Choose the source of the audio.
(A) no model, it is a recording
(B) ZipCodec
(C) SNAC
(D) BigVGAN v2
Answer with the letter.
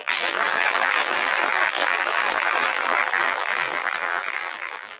D